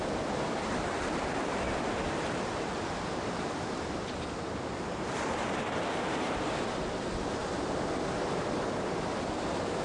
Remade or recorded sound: recorded